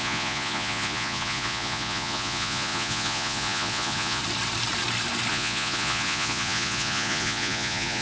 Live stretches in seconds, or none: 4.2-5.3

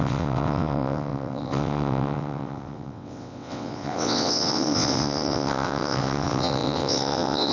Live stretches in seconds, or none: none

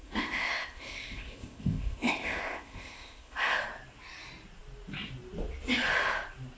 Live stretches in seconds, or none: 3.6-6.6